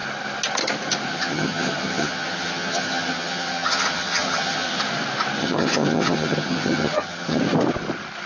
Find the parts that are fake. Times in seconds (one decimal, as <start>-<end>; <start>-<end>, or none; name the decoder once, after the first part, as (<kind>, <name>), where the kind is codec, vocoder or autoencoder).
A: 1.1-4.8 (vocoder, HiFi-GAN); 5.4-7.4